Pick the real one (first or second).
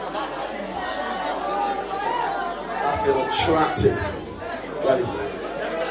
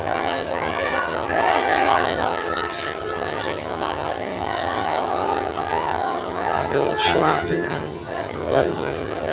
first